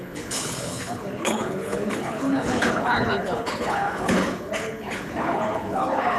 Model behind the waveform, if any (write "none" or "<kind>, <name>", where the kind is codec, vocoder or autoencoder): codec, HILCodec